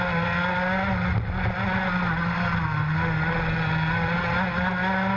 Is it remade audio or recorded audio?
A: recorded